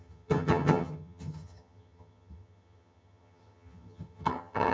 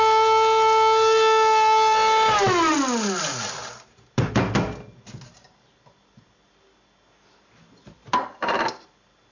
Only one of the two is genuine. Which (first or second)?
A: second